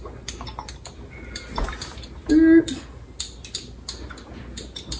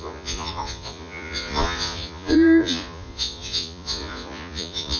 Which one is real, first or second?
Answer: first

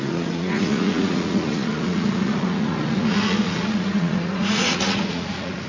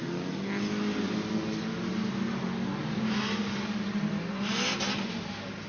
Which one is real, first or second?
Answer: second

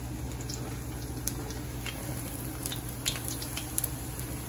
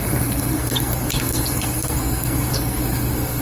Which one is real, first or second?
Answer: first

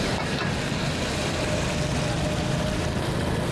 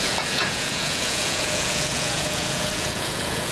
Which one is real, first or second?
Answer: first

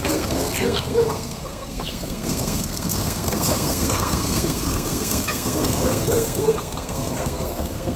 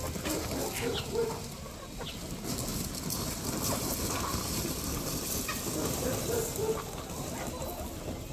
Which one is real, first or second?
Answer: second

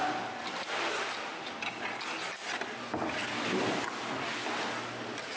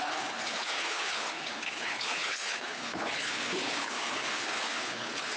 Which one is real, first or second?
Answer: first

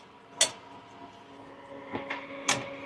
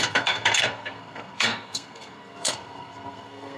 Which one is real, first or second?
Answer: first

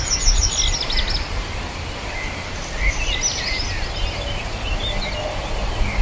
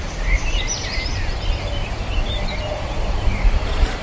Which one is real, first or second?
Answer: first